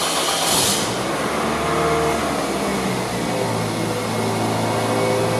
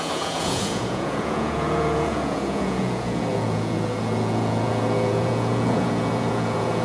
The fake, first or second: second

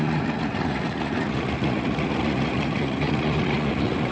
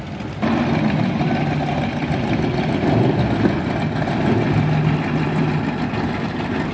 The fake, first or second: first